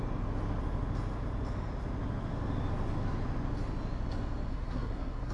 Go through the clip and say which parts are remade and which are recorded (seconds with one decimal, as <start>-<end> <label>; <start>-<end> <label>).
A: 0.0-4.5 recorded; 4.5-5.3 remade